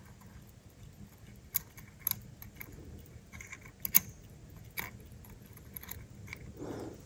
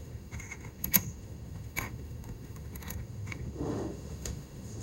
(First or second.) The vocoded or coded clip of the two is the second